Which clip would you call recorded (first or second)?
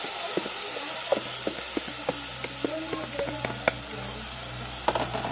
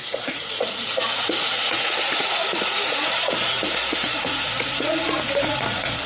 first